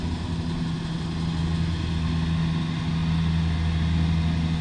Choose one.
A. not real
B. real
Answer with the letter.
B